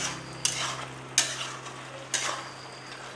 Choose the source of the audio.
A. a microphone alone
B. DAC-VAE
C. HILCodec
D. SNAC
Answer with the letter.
A